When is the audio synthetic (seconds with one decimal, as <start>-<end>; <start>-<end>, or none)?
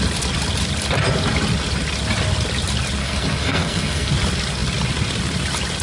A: 3.0-4.1